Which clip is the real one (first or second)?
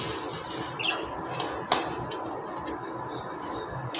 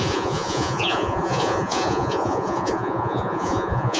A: first